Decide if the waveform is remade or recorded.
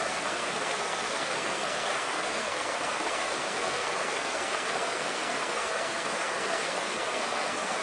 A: remade